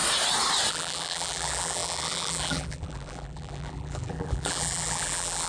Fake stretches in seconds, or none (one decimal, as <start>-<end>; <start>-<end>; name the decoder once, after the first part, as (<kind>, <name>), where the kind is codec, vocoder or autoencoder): 0.7-5.5 (vocoder, BigVGAN v2)